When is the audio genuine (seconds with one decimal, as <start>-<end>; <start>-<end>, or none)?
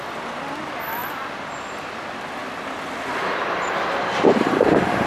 0.0-5.1